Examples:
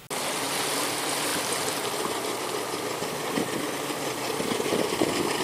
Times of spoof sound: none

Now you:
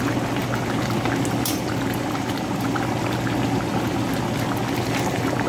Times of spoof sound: none

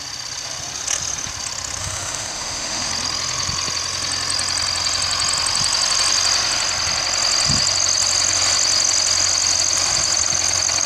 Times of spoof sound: 1.8-2.9 (autoencoder, DAC-VAE)

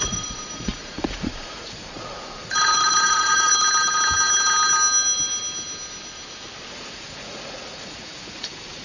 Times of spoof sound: 0.0-3.5 (vocoder, Vocos); 6.7-8.8

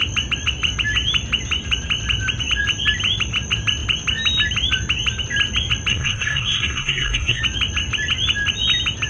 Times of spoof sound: 5.9-7.4 (codec, SNAC)

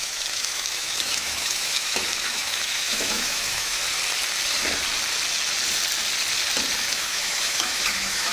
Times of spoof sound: 0.0-3.8 (autoencoder, DAC-VAE); 6.9-8.3

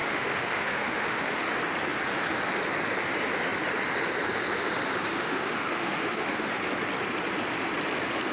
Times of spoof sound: 0.0-1.5 (autoencoder, DAC-VAE); 5.1-6.5

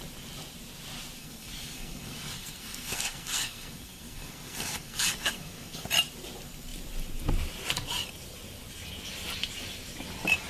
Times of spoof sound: 1.2-5.9 (codec, SNAC)